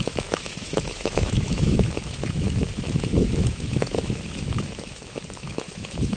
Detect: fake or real fake